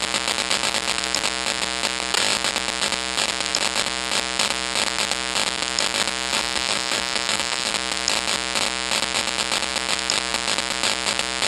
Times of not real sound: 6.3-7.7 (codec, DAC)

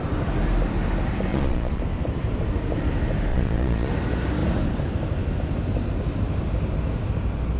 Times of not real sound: 1.3-1.8 (vocoder, Vocos); 3.3-3.9

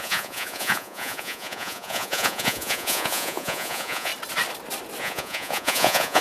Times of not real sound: 0.0-4.1 (vocoder, Vocos); 5.0-6.2

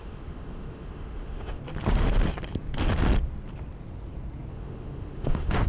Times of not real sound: 0.0-1.6 (autoencoder, DAC-VAE); 4.5-5.7

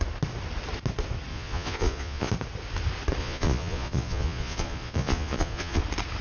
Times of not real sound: 1.3-2.3 (vocoder, Vocos); 3.2-5.8

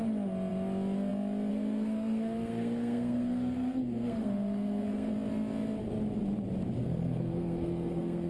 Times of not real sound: 1.5-5.1 (codec, SNAC); 6.8-8.3